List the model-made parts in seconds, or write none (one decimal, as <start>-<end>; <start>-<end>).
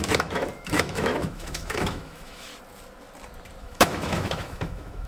0.0-2.5; 3.6-5.1